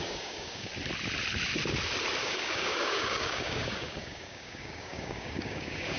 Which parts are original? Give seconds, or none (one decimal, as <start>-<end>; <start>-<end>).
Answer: 0.7-2.2